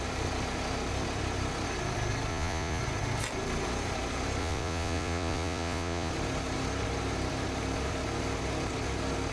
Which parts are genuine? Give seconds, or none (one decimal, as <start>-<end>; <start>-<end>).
0.0-2.3; 2.8-4.4; 6.1-9.3